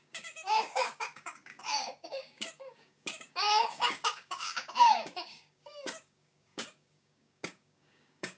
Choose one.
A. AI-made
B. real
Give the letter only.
A